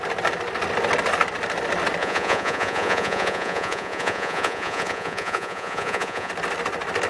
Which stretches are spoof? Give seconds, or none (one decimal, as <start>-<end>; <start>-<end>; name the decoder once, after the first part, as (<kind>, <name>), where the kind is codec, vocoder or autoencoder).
2.0-6.3 (vocoder, Vocos)